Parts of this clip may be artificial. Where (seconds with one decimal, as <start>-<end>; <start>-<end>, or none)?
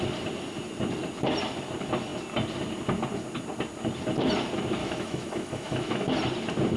4.8-6.1